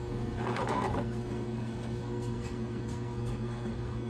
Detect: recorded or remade remade